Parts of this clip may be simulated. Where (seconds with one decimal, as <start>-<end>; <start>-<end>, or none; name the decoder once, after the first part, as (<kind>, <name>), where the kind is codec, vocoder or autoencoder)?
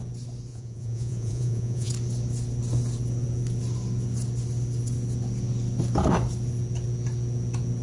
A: 0.5-1.9 (vocoder, Vocos)